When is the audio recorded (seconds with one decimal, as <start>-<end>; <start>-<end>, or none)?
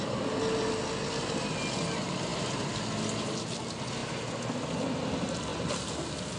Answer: 0.0-6.4